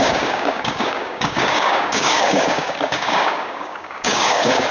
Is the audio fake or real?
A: fake